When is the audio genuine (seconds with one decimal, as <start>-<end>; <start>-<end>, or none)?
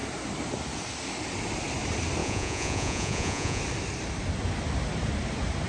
0.0-2.2; 3.6-5.7